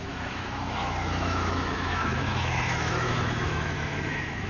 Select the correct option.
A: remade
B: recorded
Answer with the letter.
A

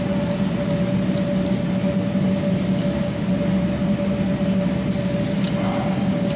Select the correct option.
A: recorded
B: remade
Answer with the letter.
A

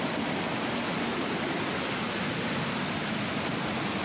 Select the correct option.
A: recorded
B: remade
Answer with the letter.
A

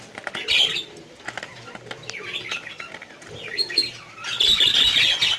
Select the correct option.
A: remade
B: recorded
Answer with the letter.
B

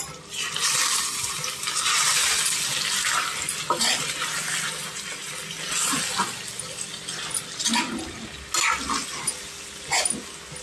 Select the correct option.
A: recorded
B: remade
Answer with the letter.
A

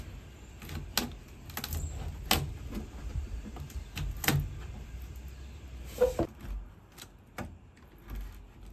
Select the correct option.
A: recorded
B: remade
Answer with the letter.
A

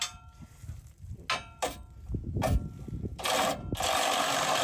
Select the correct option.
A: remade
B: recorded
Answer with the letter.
B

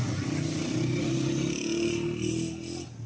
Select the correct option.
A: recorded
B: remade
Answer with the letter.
A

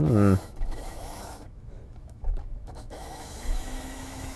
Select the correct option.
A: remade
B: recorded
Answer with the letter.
A